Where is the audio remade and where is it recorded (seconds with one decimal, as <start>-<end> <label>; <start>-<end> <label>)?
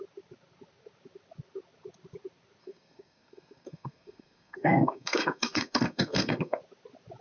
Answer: 0.0-2.6 recorded; 2.6-6.6 remade; 6.6-7.2 recorded